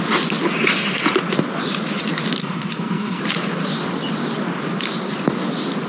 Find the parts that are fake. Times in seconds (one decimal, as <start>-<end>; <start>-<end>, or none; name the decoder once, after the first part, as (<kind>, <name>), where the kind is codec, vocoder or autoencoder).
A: 2.4-3.2 (codec, SNAC)